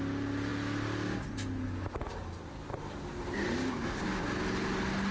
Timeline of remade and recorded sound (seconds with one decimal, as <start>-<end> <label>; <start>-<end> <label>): 0.0-3.6 recorded; 3.6-4.2 remade; 4.2-5.1 recorded